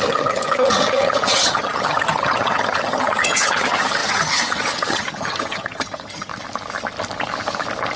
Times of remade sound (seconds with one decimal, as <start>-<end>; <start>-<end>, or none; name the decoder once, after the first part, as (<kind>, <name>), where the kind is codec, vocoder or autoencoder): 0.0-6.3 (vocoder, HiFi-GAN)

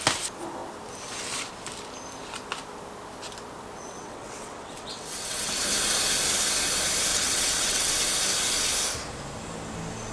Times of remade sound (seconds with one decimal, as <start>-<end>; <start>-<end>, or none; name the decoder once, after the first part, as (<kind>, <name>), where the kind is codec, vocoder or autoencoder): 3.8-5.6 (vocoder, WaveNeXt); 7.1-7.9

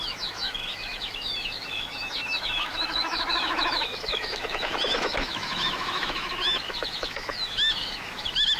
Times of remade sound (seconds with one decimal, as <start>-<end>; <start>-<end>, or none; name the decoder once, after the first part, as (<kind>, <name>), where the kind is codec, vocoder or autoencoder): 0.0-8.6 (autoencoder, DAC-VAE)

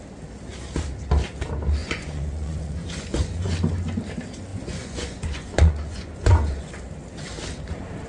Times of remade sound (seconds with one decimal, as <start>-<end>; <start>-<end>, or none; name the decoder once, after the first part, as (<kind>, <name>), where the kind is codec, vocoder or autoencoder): 1.8-3.5 (vocoder, Vocos); 4.5-6.7

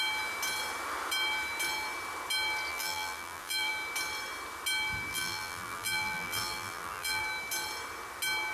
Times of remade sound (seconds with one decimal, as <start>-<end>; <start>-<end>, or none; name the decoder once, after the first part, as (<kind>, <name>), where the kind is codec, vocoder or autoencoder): 2.7-3.7 (vocoder, BigVGAN v2); 5.1-7.2

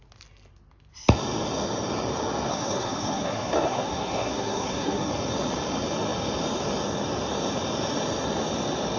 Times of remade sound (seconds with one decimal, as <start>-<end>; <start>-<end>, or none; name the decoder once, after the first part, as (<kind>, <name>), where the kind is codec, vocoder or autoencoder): 2.5-5.1 (codec, SNAC)